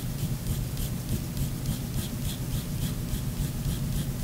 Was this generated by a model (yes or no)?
no